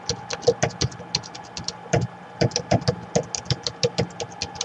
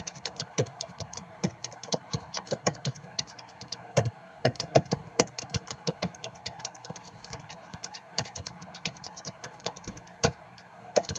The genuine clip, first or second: first